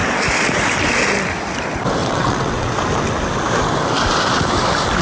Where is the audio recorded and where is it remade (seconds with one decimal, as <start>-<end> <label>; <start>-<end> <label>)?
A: 0.0-2.0 recorded; 2.0-2.7 remade; 2.7-5.0 recorded